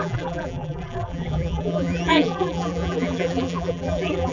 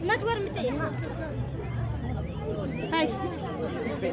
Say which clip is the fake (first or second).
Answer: first